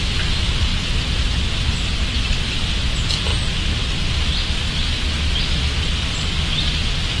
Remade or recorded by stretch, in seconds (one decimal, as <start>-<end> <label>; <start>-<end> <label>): 0.0-7.2 recorded